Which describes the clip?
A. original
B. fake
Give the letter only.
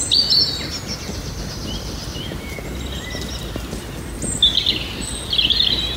A